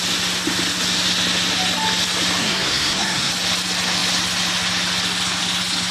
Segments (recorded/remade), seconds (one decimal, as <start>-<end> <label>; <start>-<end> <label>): 0.0-2.4 recorded; 2.4-3.3 remade; 3.3-5.9 recorded